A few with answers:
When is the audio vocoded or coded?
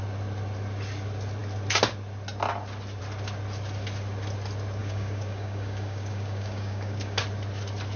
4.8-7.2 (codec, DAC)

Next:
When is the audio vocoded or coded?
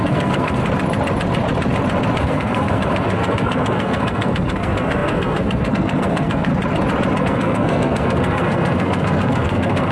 0.0-0.6 (codec, SNAC); 2.2-6.5; 7.2-9.9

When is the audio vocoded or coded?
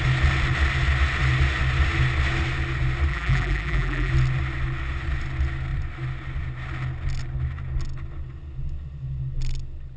3.1-4.1 (vocoder, BigVGAN v2)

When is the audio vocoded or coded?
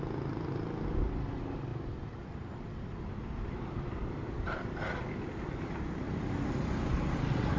none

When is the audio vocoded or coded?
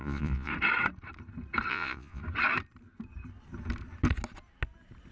0.0-0.5 (vocoder, Vocos); 1.7-2.2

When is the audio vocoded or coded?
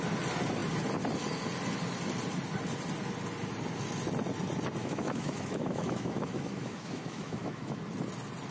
4.8-7.8 (autoencoder, DAC-VAE)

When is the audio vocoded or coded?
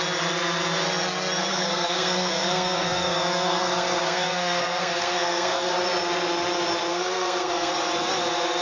1.5-5.7 (codec, SNAC); 6.9-7.7